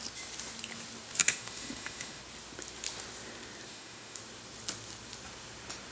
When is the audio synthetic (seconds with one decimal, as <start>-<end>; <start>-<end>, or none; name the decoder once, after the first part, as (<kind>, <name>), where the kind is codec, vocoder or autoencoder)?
1.2-2.2 (autoencoder, DAC-VAE); 3.7-4.2